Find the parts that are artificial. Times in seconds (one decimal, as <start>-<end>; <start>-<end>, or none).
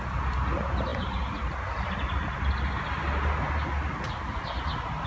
none